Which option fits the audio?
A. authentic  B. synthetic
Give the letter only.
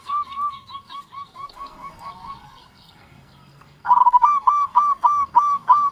B